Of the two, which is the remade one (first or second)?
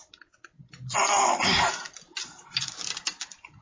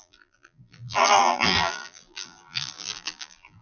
second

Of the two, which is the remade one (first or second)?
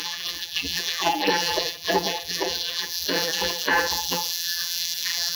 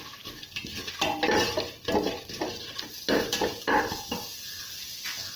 first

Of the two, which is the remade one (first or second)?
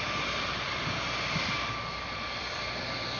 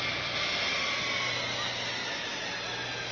first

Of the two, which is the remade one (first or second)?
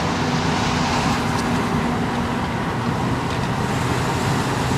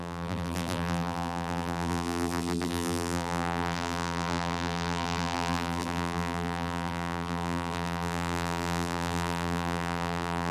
second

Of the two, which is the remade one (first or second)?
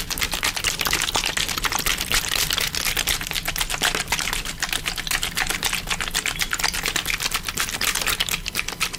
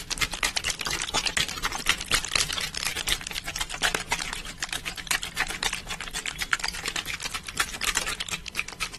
second